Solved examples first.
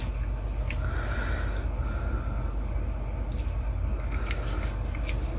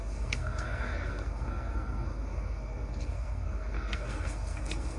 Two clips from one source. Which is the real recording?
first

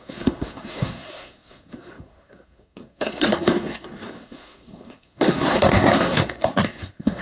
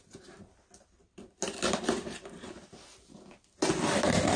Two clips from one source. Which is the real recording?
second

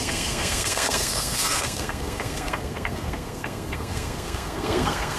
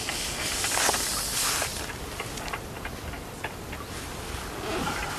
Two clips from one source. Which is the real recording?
second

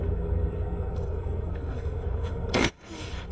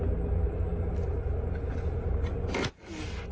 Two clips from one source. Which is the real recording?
second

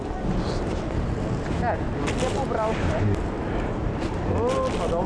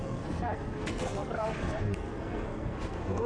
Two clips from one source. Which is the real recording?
first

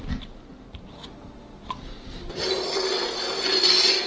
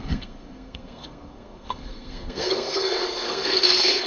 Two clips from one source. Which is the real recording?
first